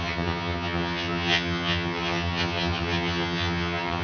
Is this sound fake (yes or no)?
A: yes